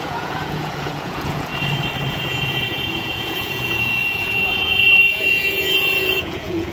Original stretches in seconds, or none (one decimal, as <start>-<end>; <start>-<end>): 1.5-2.1